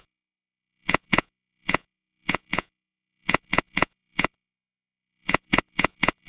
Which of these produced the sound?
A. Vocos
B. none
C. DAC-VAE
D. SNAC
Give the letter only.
A